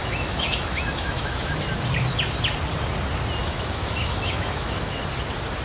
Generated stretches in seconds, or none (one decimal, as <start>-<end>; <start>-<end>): 0.0-1.6; 3.4-5.0